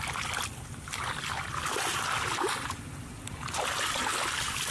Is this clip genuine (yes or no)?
yes